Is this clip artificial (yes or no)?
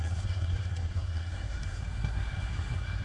yes